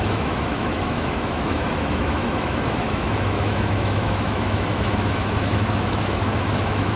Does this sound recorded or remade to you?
remade